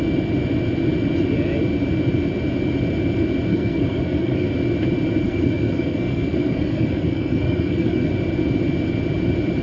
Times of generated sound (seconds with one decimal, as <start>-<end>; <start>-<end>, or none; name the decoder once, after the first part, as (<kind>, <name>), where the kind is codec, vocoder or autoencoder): 3.5-4.5 (codec, SNAC); 5.2-8.1